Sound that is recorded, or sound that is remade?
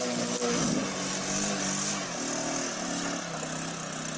recorded